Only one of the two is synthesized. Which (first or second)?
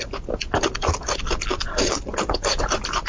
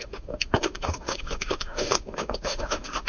second